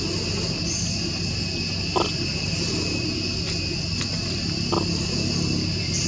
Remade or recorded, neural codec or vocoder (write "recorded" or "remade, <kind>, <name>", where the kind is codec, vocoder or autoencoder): recorded